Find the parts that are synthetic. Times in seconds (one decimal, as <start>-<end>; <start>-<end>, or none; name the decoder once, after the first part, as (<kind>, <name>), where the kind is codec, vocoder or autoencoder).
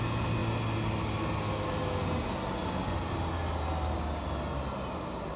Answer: none